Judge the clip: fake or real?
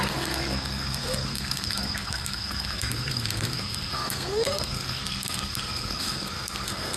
fake